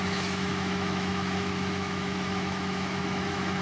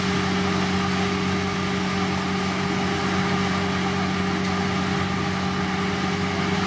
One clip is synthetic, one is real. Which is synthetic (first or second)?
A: first